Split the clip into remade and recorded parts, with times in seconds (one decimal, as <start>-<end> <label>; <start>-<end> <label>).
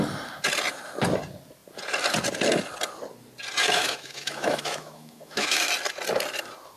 0.0-3.6 recorded; 3.6-5.7 remade; 5.7-6.8 recorded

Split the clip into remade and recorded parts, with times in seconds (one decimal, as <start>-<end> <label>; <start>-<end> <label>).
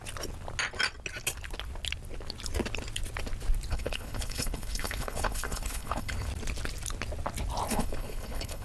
0.0-3.7 recorded; 3.7-6.3 remade; 6.3-7.7 recorded; 7.7-8.6 remade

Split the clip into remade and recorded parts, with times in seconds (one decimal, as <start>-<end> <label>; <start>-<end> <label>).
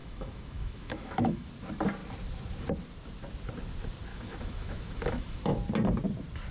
0.0-1.5 remade; 1.5-4.1 recorded; 4.1-5.4 remade; 5.4-6.5 recorded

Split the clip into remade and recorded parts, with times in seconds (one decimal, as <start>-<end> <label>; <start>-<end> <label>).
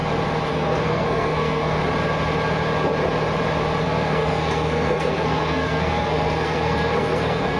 0.0-0.5 recorded; 0.5-1.8 remade; 1.8-3.8 recorded; 3.8-7.6 remade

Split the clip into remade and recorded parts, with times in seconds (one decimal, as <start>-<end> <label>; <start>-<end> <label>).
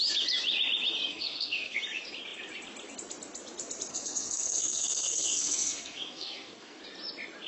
0.0-1.1 recorded; 1.1-1.8 remade; 1.8-3.9 recorded; 3.9-6.8 remade; 6.8-7.5 recorded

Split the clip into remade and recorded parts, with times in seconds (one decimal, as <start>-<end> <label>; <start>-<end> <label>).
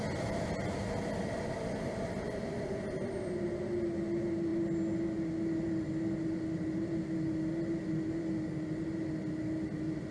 0.0-10.1 recorded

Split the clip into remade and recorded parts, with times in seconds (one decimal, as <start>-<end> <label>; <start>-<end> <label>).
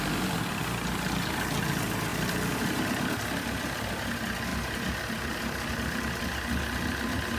0.0-2.1 recorded; 2.1-3.9 remade; 3.9-4.5 recorded; 4.5-6.2 remade; 6.2-7.4 recorded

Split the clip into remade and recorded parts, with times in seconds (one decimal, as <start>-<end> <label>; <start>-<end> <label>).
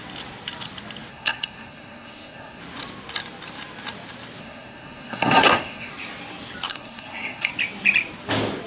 0.0-1.1 recorded; 1.1-2.6 remade; 2.6-4.4 recorded; 4.4-5.9 remade; 5.9-6.7 recorded; 6.7-7.5 remade; 7.5-8.7 recorded